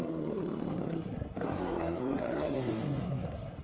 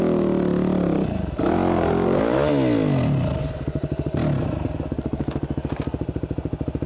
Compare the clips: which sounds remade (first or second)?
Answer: first